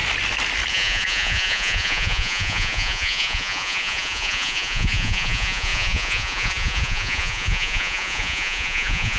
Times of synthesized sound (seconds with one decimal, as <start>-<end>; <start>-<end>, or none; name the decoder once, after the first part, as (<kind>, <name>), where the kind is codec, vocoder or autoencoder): 0.7-9.2 (vocoder, Vocos)